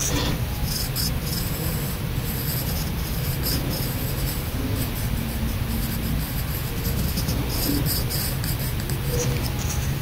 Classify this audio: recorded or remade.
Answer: recorded